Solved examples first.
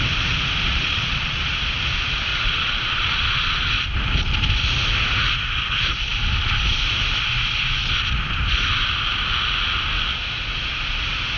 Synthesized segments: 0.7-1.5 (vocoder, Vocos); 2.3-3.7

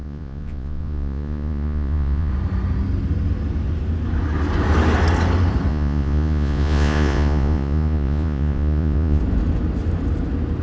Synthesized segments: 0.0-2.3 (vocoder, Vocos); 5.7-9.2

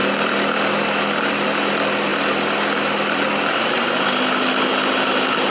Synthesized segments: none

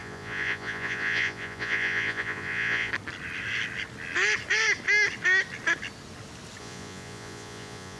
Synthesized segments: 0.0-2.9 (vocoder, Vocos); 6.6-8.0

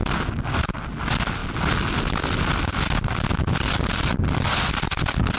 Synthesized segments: none

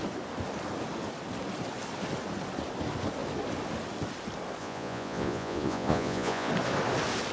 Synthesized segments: 4.6-6.5 (vocoder, Vocos)

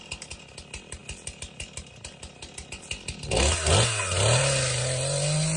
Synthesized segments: none

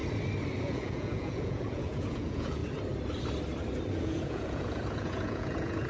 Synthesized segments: 0.6-2.6 (vocoder, Vocos); 4.0-5.9